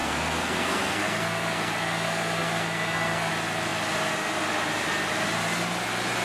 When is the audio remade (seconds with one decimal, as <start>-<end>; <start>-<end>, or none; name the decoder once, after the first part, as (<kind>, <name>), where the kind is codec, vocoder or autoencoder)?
0.0-3.3 (codec, SNAC)